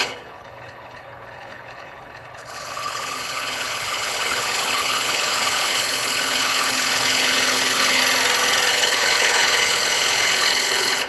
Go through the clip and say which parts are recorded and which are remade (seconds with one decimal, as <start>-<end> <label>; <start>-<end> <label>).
0.0-8.0 remade; 8.0-8.7 recorded; 8.7-11.1 remade